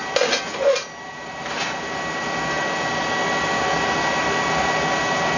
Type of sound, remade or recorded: recorded